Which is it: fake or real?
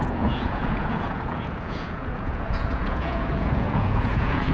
fake